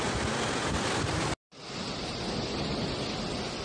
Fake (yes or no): no